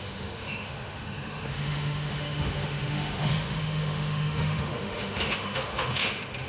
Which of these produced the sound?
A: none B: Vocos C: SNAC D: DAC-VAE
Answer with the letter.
D